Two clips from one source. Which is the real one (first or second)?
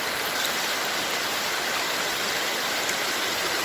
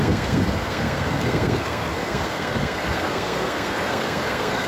first